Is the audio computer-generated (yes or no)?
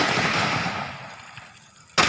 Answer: no